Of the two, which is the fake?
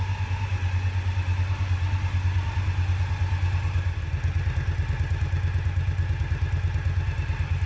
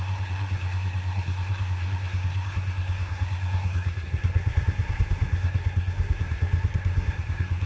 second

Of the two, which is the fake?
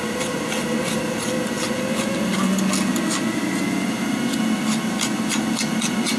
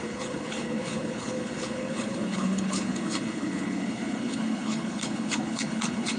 second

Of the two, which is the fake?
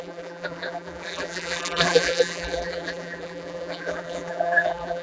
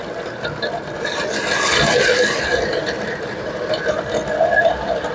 first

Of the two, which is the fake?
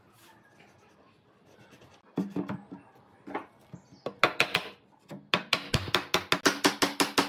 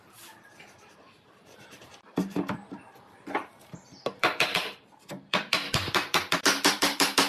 second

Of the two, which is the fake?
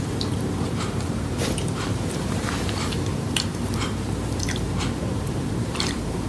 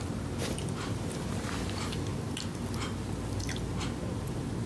first